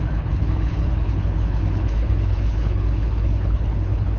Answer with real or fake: fake